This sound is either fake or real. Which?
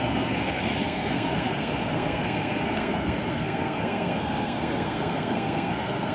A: fake